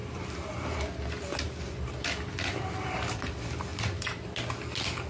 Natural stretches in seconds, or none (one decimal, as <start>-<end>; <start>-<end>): 0.0-5.1